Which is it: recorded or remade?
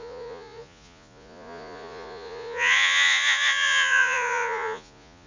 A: remade